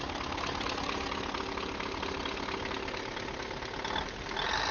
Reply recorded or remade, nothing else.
recorded